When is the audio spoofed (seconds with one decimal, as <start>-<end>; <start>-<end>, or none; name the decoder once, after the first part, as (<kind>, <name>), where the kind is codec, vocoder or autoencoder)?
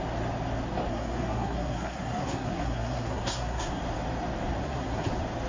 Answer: 0.9-3.8 (codec, SNAC); 4.6-5.1